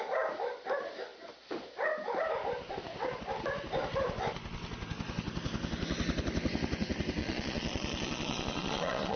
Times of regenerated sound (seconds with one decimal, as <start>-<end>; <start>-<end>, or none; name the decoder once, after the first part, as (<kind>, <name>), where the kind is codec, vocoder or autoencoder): 7.2-9.2 (vocoder, Vocos)